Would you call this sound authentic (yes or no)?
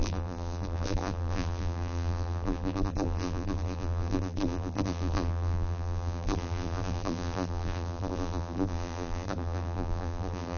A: no